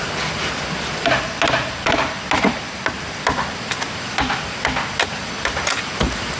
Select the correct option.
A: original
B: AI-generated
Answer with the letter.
A